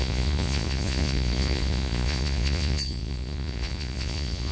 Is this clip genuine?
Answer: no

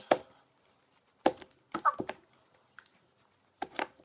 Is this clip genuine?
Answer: yes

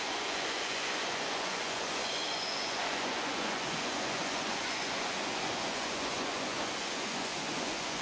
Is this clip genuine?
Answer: no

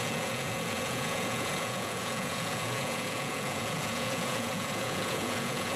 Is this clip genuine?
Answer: no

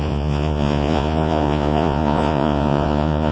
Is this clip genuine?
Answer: no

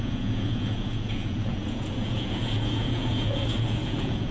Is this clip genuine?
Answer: no